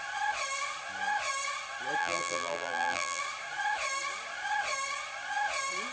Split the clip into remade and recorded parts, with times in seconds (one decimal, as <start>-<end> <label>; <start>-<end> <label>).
0.0-2.0 recorded; 2.0-3.2 remade; 3.2-5.9 recorded